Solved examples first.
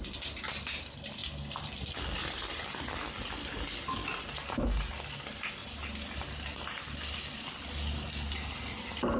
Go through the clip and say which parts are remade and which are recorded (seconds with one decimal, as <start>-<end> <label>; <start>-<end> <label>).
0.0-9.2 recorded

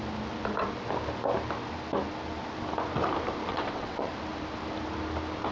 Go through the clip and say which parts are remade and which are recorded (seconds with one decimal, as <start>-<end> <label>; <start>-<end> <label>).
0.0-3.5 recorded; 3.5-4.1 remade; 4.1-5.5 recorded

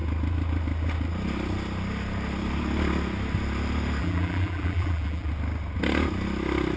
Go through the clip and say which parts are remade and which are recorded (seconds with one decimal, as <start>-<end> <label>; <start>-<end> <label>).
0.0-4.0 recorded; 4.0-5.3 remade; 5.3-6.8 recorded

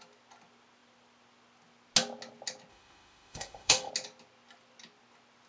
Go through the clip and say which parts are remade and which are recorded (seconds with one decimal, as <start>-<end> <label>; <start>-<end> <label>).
0.0-2.7 recorded; 2.7-3.9 remade; 3.9-5.5 recorded

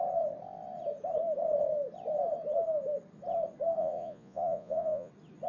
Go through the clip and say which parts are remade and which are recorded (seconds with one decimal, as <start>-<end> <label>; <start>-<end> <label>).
0.0-3.8 recorded; 3.8-5.1 remade; 5.1-5.5 recorded